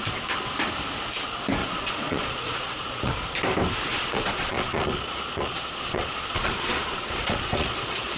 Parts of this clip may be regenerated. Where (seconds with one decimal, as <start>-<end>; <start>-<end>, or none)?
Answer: 1.6-3.1; 3.9-8.2